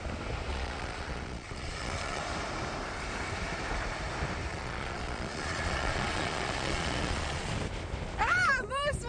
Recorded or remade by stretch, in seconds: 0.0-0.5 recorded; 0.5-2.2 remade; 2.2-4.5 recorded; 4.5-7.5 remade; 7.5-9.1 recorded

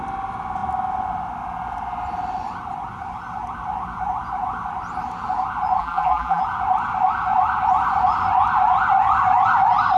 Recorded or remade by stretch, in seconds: 0.0-5.8 recorded; 5.8-6.4 remade; 6.4-10.0 recorded